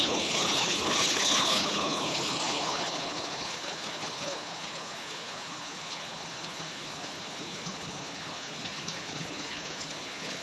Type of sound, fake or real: fake